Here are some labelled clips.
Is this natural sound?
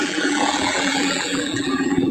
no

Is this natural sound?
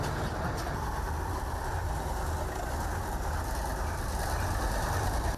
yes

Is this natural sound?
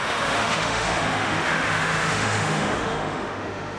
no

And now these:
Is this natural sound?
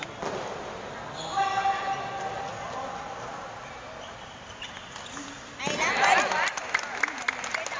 yes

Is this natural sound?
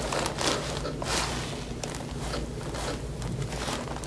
yes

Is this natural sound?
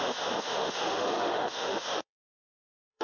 no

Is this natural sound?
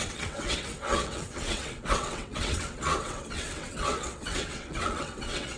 no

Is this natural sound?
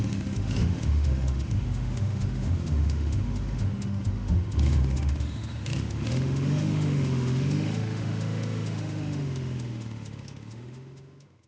no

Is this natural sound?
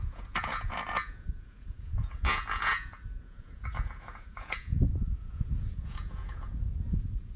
no